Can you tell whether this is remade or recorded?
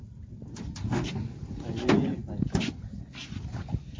recorded